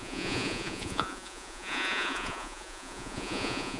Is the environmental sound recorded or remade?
remade